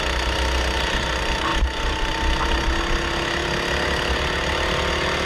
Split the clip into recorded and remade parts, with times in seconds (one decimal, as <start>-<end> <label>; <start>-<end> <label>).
0.0-5.3 recorded